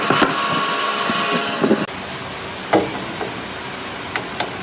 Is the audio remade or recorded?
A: recorded